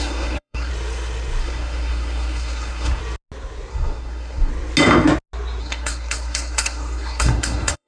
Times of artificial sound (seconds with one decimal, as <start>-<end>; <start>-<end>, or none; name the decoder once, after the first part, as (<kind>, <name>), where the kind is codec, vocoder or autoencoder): 0.0-0.7 (codec, SNAC); 1.4-3.0; 3.7-4.5; 5.6-7.9